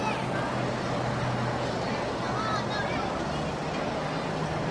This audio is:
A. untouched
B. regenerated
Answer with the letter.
A